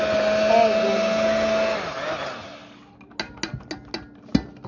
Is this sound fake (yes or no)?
no